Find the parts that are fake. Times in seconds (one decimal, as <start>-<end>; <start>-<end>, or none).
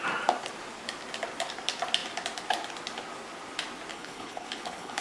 3.9-5.0